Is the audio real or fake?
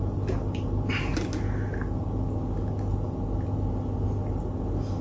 real